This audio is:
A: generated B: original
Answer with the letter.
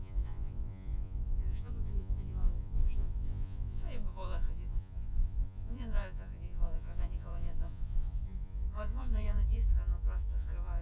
A